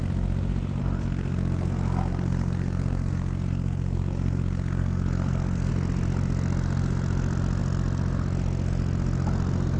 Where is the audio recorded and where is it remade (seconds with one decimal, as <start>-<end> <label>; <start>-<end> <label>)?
0.0-0.8 recorded; 0.8-5.7 remade; 5.7-9.8 recorded